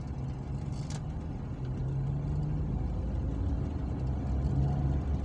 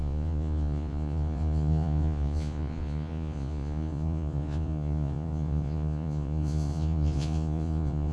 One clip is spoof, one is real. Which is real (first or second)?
first